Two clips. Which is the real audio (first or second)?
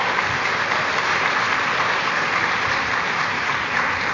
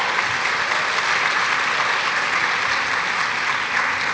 second